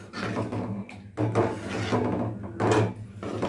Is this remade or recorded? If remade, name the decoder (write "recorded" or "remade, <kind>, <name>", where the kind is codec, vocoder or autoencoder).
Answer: recorded